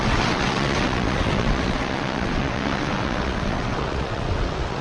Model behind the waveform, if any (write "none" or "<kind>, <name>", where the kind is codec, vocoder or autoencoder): vocoder, WaveNeXt